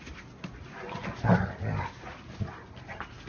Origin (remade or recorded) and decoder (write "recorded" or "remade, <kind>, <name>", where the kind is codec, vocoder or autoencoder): recorded